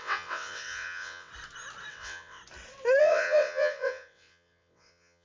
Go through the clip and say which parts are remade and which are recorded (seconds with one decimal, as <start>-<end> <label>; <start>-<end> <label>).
0.0-1.3 remade; 1.3-1.9 recorded; 1.9-2.4 remade; 2.4-3.0 recorded; 3.0-5.2 remade